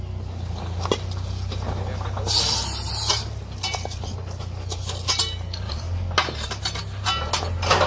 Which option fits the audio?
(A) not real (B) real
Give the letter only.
B